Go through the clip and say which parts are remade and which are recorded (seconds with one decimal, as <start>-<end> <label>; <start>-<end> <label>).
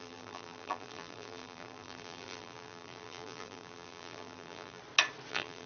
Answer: 0.0-4.8 remade; 4.8-5.3 recorded; 5.3-5.7 remade